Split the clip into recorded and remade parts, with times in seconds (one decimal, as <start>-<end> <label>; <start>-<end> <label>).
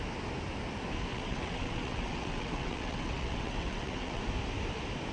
0.0-1.1 recorded; 1.1-4.2 remade; 4.2-5.1 recorded